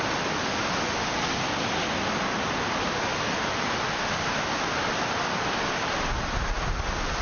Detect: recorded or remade recorded